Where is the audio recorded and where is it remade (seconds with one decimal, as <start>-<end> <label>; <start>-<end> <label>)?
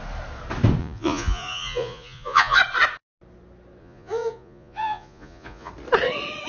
0.0-0.8 recorded; 0.8-2.6 remade; 2.6-3.8 recorded; 3.8-5.7 remade; 5.7-6.5 recorded